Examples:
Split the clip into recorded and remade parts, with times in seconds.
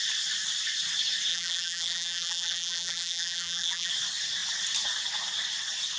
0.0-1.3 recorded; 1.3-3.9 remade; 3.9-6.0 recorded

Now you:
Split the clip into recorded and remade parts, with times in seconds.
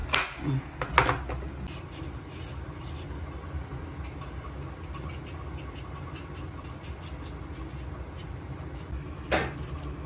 0.0-10.1 recorded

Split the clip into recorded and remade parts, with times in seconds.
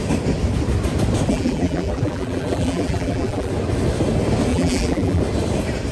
0.0-1.3 recorded; 1.3-3.5 remade; 3.5-4.5 recorded; 4.5-5.2 remade; 5.2-5.9 recorded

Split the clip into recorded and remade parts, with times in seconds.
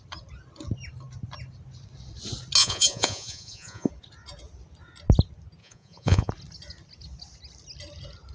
0.0-2.6 recorded; 2.6-3.9 remade; 3.9-5.6 recorded; 5.6-6.3 remade; 6.3-8.3 recorded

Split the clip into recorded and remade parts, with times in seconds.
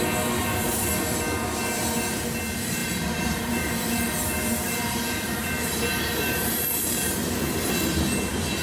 0.0-0.4 recorded; 0.4-0.9 remade; 0.9-2.8 recorded; 2.8-7.1 remade; 7.1-8.6 recorded